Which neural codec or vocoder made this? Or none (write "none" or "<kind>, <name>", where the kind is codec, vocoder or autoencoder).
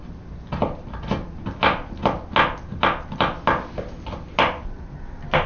none